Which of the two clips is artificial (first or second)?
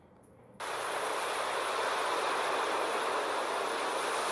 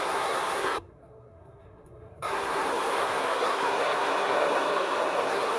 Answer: second